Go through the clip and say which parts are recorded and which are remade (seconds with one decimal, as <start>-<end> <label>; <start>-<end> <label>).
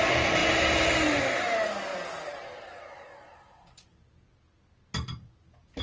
0.0-5.8 recorded